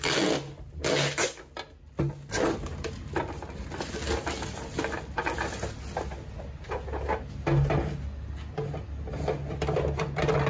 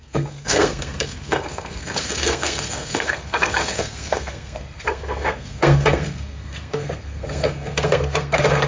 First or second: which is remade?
second